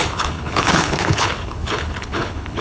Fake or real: fake